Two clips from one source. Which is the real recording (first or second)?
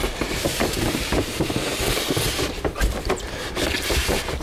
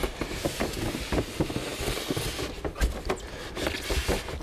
second